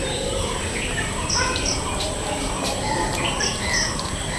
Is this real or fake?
fake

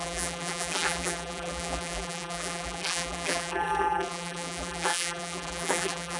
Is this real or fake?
fake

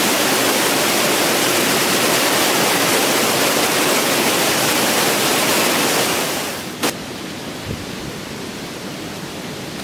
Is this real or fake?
real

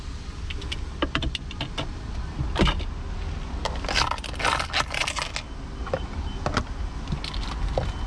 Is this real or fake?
real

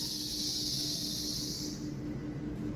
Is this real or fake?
real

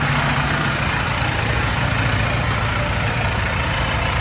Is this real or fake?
fake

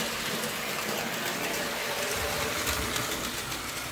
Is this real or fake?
real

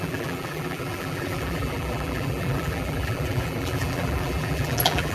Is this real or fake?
fake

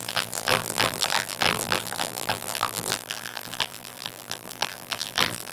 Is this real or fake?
fake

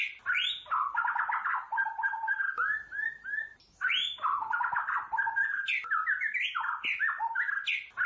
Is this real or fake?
real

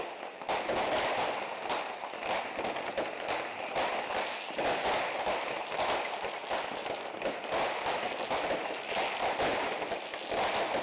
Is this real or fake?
real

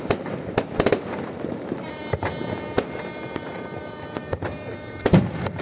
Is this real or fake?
fake